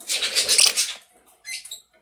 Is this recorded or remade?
recorded